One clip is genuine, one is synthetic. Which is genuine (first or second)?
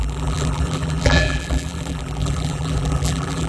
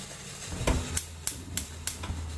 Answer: second